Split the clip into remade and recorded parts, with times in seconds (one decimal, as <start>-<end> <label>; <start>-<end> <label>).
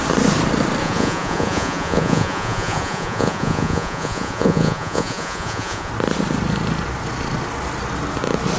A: 0.0-0.8 recorded; 0.8-5.9 remade; 5.9-8.6 recorded